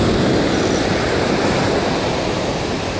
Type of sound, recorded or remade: recorded